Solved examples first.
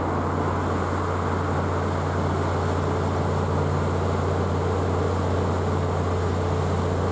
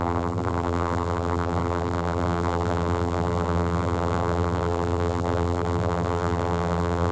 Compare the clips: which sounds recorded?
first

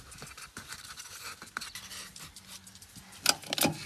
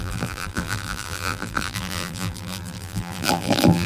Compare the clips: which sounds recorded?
first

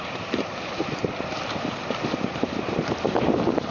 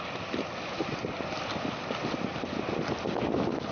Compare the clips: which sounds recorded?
second